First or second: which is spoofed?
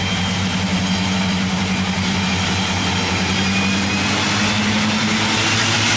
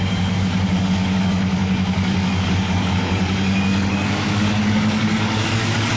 second